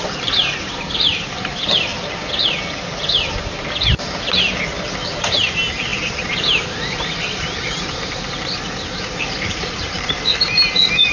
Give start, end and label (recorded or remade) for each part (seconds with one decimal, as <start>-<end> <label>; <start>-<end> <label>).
0.0-1.9 remade; 1.9-5.0 recorded; 5.0-11.1 remade